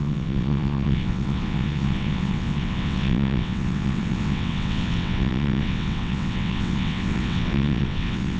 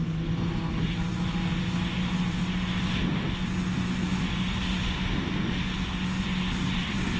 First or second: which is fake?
first